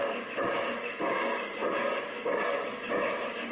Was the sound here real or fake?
fake